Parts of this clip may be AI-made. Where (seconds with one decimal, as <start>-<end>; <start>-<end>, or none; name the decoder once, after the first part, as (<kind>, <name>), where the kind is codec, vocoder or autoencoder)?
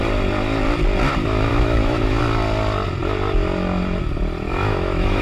1.5-2.2 (autoencoder, DAC-VAE); 4.5-5.2